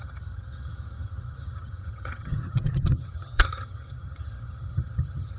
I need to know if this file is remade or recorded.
remade